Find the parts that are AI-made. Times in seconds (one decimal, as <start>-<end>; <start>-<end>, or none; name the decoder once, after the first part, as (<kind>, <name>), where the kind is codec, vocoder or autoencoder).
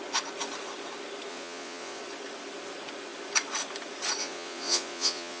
1.3-2.0 (vocoder, Vocos); 4.2-5.4